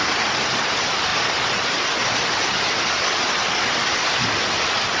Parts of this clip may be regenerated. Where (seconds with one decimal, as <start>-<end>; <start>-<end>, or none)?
none